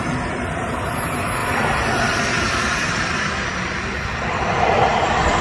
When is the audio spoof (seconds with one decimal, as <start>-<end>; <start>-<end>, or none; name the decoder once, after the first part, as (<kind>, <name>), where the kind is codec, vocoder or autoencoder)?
none